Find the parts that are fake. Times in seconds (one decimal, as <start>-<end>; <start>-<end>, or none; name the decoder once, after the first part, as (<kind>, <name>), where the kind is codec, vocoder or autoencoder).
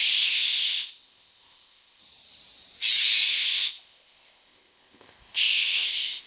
0.0-2.0 (codec, ZipCodec); 3.3-6.3